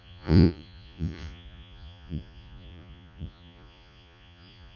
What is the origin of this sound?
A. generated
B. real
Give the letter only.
A